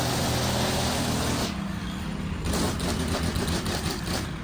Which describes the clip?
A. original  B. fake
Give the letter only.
A